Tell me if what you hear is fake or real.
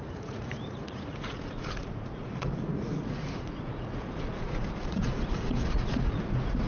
fake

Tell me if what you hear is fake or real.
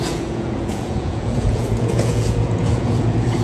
fake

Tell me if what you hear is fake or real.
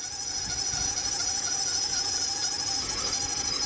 fake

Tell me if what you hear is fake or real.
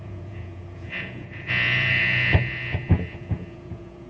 fake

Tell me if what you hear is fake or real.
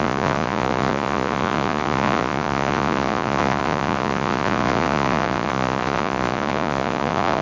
fake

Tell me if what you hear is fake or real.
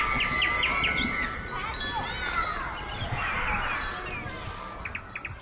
real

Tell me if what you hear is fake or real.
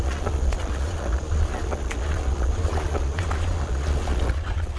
fake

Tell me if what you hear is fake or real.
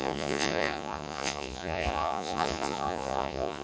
fake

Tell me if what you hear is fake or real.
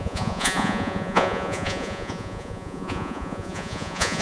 fake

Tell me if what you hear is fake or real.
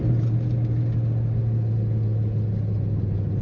real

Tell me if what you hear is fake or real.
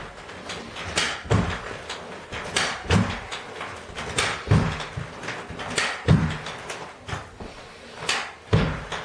real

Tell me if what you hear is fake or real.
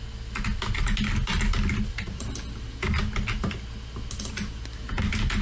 real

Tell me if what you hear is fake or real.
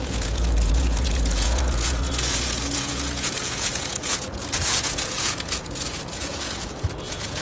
fake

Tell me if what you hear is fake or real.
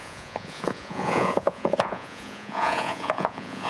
fake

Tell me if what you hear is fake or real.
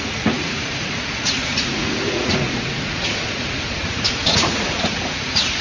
fake